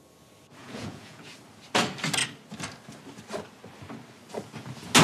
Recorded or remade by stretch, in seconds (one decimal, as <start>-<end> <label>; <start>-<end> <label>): 0.0-0.6 recorded; 0.6-1.3 remade; 1.3-5.0 recorded